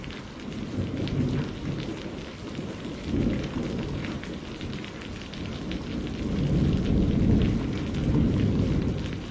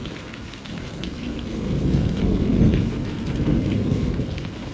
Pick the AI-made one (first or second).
second